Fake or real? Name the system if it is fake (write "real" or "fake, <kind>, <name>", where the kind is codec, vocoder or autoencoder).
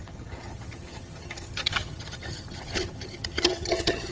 fake, vocoder, HiFi-GAN